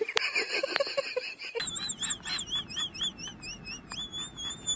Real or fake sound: real